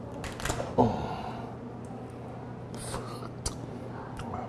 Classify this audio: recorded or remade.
recorded